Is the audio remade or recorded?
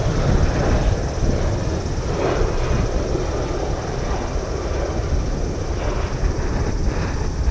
recorded